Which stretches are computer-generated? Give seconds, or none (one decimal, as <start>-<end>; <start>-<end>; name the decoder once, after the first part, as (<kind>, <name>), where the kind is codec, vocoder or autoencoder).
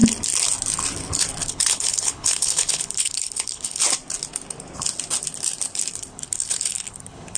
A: 1.4-3.8 (codec, HILCodec); 6.1-7.4